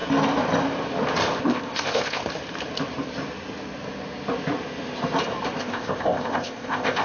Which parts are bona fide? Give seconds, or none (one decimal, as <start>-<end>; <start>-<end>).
0.0-1.4; 2.2-5.6